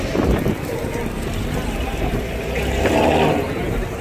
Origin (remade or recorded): remade